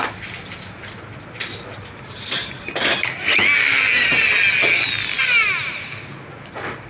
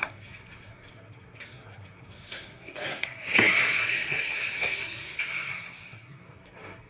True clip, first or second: first